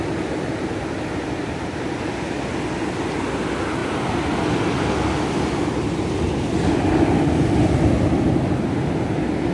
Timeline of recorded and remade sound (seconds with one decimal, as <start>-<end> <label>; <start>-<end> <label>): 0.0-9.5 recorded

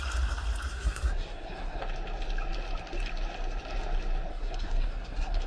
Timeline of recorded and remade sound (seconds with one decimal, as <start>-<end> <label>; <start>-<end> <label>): 0.0-0.7 recorded; 0.7-1.8 remade; 1.8-4.3 recorded; 4.3-5.5 remade

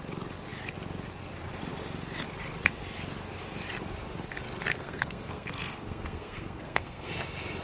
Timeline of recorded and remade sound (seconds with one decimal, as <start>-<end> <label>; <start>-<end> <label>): 0.0-4.7 recorded; 4.7-7.1 remade; 7.1-7.6 recorded

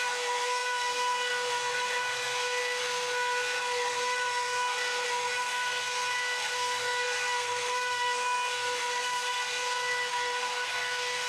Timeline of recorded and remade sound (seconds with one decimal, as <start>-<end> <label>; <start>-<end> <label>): 0.0-11.3 remade

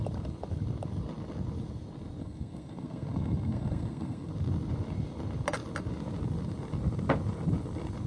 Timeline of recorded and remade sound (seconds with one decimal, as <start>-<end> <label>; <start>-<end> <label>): 0.0-2.2 recorded; 2.2-4.3 remade; 4.3-8.1 recorded

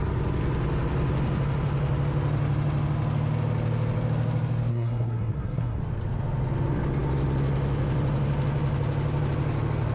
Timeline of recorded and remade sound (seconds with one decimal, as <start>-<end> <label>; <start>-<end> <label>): 0.0-4.7 recorded; 4.7-5.8 remade; 5.8-9.9 recorded